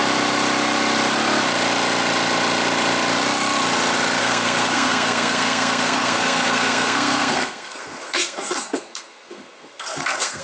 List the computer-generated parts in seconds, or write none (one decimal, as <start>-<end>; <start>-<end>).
4.2-10.4